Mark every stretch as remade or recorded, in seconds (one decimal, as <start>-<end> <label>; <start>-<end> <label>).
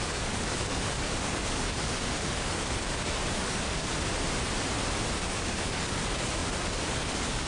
0.0-3.9 remade; 3.9-5.2 recorded; 5.2-7.5 remade